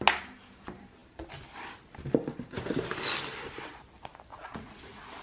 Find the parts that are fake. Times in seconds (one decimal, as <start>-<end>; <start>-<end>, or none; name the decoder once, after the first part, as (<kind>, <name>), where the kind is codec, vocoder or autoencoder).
4.3-5.2 (vocoder, Vocos)